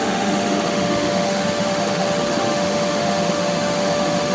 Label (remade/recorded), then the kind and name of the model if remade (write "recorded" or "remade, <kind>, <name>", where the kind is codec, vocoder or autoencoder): remade, autoencoder, DAC-VAE